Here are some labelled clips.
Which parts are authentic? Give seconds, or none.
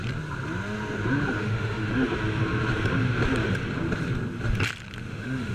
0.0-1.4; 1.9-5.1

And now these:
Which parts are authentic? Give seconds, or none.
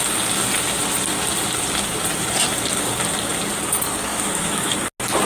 0.0-4.1; 4.7-5.3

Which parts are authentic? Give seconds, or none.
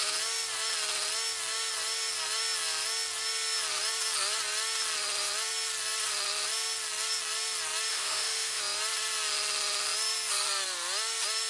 0.0-7.9; 8.6-11.5